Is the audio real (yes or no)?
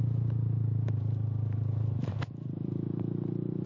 yes